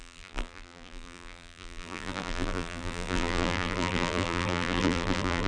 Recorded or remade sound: remade